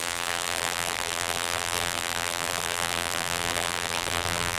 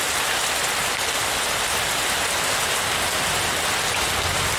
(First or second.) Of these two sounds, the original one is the second